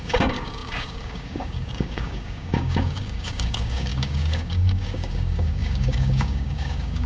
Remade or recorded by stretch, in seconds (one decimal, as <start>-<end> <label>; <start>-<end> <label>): 0.0-7.1 remade